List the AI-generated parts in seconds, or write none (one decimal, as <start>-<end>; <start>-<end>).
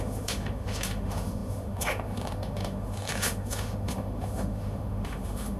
0.0-5.6